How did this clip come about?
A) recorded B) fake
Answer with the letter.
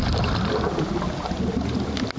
A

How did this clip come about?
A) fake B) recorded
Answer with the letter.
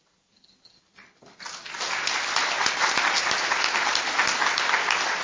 B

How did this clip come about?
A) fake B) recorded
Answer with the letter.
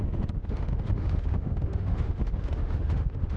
A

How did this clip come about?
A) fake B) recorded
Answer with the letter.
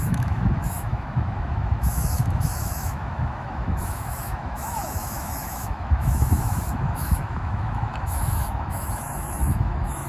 A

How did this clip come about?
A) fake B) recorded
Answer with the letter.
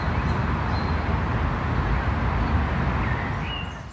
B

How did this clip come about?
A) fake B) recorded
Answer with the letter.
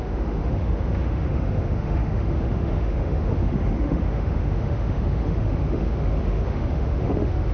A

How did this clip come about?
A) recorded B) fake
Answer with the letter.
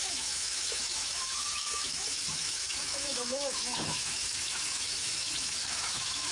B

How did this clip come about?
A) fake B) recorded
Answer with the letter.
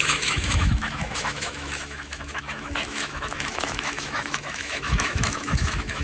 A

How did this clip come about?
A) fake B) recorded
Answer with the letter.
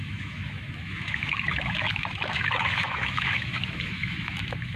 A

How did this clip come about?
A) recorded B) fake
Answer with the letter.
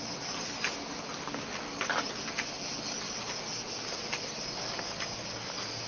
A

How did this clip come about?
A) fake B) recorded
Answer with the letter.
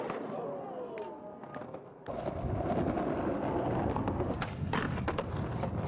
B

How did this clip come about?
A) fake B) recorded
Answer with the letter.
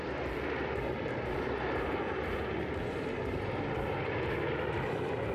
B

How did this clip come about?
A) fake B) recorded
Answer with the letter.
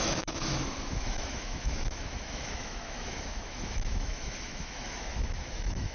A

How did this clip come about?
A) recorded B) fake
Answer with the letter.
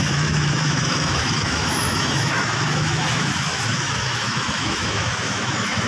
B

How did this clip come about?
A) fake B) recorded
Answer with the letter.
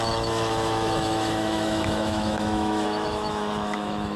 A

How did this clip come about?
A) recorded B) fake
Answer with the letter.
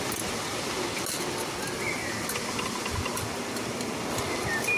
A